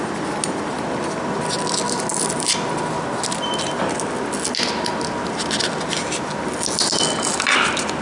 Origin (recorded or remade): recorded